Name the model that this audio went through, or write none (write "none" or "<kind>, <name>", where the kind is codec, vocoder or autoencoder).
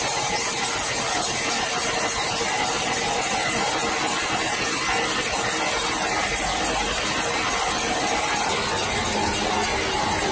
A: none